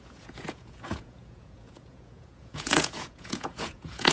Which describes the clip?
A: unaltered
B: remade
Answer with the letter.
B